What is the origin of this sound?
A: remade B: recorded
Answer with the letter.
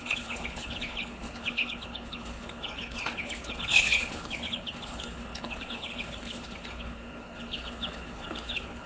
A